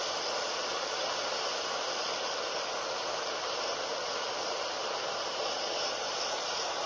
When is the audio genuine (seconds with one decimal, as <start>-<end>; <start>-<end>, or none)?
1.0-5.1